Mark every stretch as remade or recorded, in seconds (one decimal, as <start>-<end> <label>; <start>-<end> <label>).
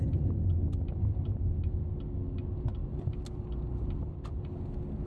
0.0-5.1 recorded